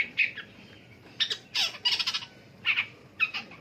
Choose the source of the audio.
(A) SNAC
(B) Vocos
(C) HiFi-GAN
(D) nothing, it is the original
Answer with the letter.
D